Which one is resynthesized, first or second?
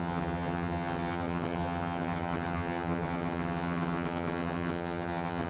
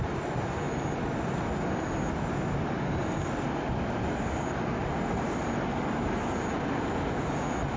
first